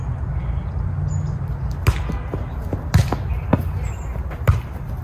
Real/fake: real